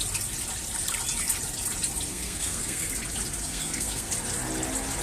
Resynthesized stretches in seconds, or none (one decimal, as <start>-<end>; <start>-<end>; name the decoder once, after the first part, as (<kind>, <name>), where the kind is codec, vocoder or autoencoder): 2.1-2.9 (codec, SNAC); 3.4-4.1